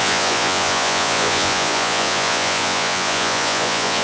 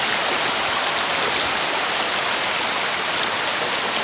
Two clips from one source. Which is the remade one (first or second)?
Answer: first